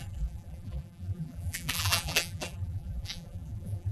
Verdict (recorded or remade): remade